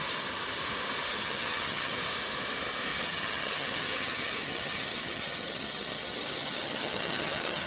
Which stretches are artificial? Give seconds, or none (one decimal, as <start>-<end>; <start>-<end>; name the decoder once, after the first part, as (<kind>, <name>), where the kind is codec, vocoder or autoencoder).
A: 1.1-1.9 (vocoder, HiFi-GAN); 2.9-7.7